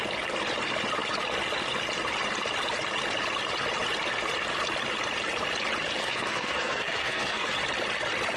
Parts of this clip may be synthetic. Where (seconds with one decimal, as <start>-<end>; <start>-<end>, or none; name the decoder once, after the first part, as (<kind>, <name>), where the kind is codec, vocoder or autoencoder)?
6.0-7.5 (codec, SNAC)